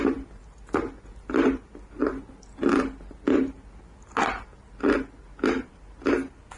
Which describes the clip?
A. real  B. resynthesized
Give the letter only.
A